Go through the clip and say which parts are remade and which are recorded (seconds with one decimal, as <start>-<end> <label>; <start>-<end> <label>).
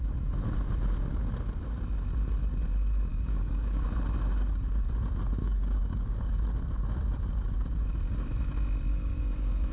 0.0-3.1 recorded; 3.1-3.9 remade; 3.9-5.4 recorded; 5.4-6.4 remade; 6.4-8.9 recorded; 8.9-9.7 remade